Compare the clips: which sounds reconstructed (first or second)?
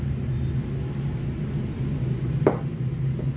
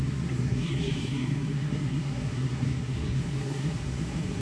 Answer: second